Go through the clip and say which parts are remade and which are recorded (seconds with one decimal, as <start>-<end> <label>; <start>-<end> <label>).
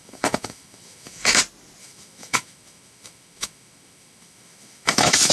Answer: 0.0-1.4 remade; 1.4-1.8 recorded; 1.8-5.3 remade